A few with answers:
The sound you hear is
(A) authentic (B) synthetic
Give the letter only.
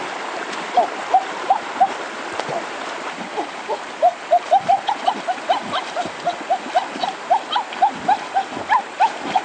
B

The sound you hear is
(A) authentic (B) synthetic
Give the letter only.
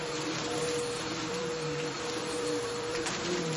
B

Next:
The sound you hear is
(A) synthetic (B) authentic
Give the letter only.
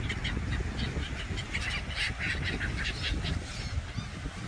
B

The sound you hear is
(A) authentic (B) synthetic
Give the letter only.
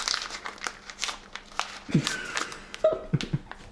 A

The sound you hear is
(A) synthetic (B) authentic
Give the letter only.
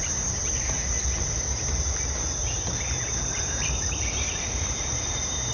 A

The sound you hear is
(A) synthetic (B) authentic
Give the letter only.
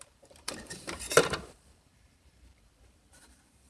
A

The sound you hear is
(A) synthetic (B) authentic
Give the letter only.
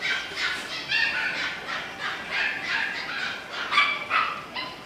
B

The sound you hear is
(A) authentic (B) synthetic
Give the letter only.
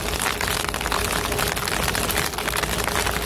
A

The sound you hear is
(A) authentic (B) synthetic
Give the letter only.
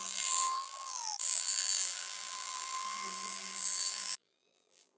B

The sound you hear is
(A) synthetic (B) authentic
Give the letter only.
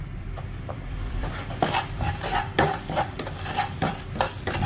A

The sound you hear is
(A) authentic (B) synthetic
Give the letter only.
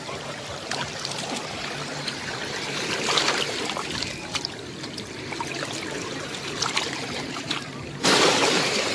B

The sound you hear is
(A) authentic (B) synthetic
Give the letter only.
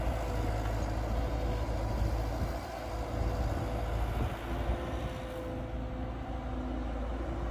A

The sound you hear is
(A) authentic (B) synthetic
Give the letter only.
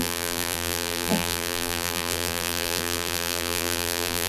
B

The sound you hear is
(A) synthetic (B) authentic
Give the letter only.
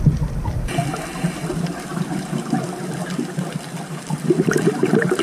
A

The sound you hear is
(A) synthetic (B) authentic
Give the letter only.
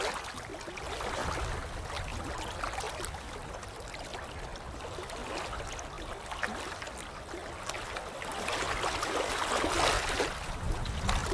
B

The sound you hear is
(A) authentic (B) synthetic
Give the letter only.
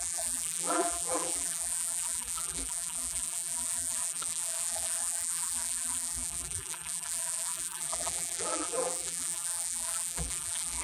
B